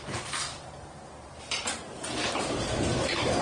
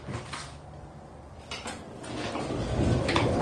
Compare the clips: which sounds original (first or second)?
second